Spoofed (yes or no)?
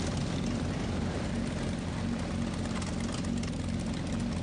no